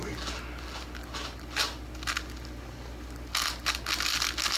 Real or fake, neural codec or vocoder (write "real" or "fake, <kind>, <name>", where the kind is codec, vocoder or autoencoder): real